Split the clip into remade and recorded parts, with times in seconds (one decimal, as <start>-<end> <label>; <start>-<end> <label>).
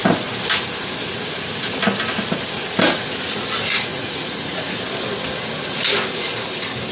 0.0-3.9 recorded; 3.9-4.8 remade; 4.8-6.9 recorded